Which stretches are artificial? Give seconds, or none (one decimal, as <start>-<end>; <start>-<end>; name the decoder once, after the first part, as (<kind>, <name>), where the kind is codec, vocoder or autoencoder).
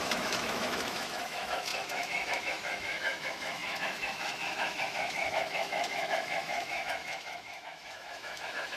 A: 0.0-8.8 (autoencoder, DAC-VAE)